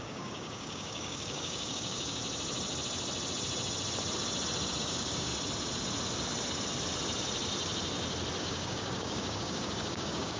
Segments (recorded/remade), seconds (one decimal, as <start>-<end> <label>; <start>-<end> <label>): 0.0-2.2 remade; 2.2-4.8 recorded; 4.8-5.3 remade; 5.3-8.4 recorded; 8.4-10.4 remade